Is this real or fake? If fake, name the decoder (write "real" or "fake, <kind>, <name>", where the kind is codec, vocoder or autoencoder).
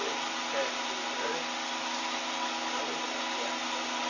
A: real